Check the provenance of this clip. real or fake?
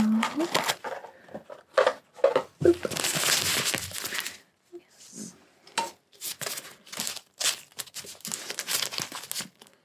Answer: real